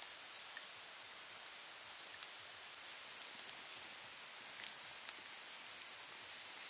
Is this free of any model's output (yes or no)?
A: yes